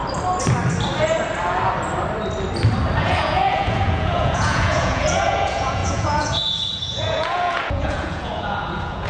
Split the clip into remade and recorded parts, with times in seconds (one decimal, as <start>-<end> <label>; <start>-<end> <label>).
0.0-3.0 recorded; 3.0-9.1 remade